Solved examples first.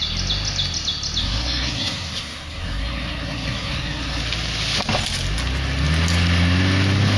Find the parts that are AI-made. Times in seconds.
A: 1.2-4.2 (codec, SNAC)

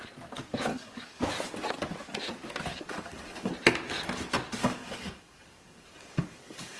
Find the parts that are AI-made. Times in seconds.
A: 0.7-1.2 (codec, DAC); 2.7-3.5; 4.6-6.8

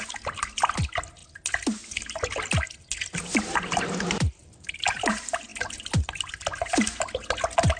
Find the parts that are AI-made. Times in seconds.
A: 4.4-4.9 (vocoder, BigVGAN v2)

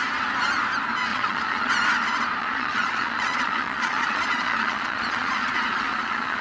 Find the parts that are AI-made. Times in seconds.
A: 1.1-1.7 (vocoder, Vocos); 2.4-6.4

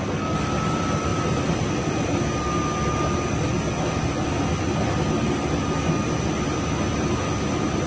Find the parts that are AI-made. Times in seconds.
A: none

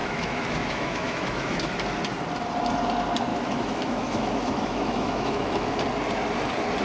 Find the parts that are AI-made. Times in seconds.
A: 0.0-1.7 (autoencoder, DAC-VAE); 3.3-5.7

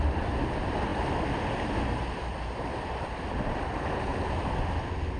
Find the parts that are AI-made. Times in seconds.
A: 0.0-4.1 (vocoder, BigVGAN v2)

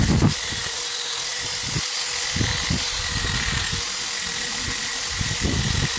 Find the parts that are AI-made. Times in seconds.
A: none